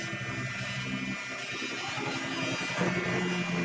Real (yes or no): yes